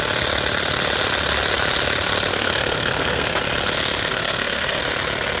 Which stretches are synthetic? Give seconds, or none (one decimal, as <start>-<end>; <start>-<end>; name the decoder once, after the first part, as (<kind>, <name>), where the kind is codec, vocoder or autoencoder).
2.3-3.4 (codec, SNAC); 4.1-4.8